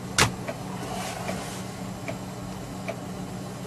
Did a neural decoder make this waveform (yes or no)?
no